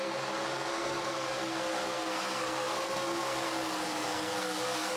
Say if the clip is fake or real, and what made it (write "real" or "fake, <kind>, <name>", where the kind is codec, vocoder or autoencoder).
fake, codec, SNAC